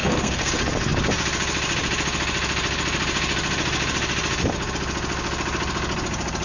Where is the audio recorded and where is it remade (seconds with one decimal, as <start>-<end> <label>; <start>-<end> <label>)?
0.0-0.5 remade; 0.5-6.4 recorded